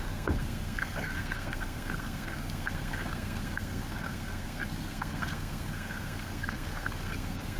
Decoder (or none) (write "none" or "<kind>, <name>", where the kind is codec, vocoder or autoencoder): codec, SNAC